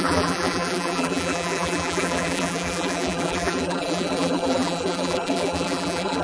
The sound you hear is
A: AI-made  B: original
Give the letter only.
A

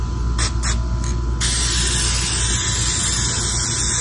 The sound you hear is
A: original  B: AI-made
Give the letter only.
A